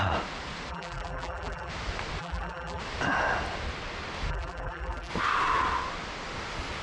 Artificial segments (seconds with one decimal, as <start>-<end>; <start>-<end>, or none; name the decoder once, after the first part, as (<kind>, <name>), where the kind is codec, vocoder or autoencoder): 0.7-1.7 (vocoder, BigVGAN v2); 2.2-2.8; 4.3-5.1